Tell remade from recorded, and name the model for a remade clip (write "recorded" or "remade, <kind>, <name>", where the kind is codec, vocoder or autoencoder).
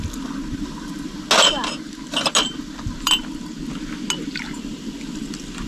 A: recorded